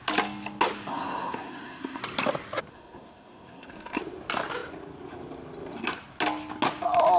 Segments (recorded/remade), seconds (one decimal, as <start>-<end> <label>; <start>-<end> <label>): 0.0-0.9 recorded; 0.9-2.0 remade; 2.0-2.7 recorded; 2.7-4.0 remade; 4.0-7.2 recorded